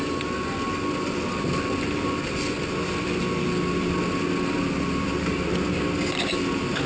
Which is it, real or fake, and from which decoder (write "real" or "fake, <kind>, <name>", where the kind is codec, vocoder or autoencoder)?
real